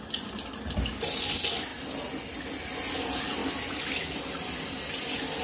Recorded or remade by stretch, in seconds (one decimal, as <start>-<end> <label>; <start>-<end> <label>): 0.0-5.4 recorded